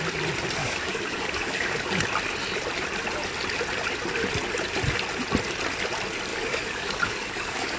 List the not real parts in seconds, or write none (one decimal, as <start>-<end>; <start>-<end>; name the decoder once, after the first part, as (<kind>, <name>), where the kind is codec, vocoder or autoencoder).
0.6-2.0 (codec, DAC); 6.3-7.8